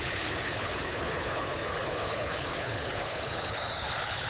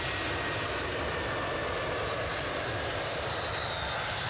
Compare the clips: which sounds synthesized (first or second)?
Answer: first